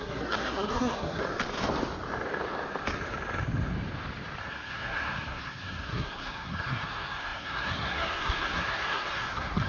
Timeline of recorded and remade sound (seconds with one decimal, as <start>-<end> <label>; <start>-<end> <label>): 0.0-1.2 remade; 1.2-4.4 recorded; 4.4-9.7 remade